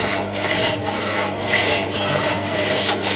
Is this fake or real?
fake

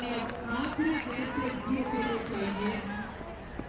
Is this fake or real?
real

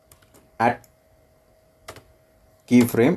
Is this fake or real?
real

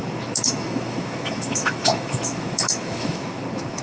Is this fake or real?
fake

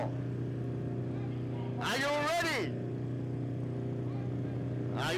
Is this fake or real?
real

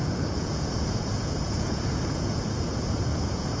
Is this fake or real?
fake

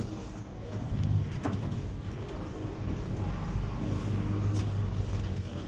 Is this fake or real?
fake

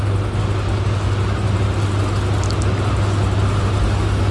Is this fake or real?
real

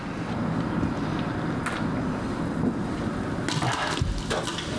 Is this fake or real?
real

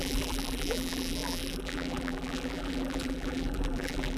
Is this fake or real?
fake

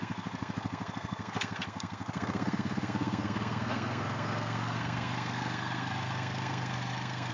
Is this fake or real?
fake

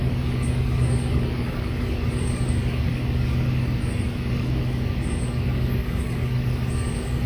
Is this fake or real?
fake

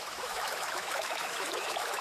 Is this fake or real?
fake